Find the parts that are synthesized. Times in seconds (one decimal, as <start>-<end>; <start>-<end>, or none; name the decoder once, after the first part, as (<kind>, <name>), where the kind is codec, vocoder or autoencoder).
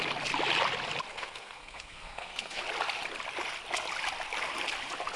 1.1-2.6 (codec, SNAC)